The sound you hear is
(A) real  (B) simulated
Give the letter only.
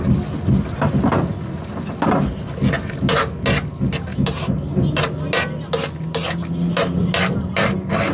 A